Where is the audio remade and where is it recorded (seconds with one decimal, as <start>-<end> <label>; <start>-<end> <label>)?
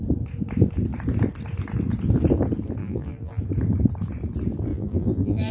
0.0-2.8 recorded; 2.8-3.4 remade; 3.4-4.7 recorded; 4.7-5.5 remade